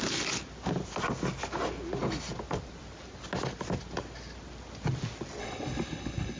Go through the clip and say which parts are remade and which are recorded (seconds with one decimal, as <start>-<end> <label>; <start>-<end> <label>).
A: 0.0-5.4 recorded; 5.4-6.4 remade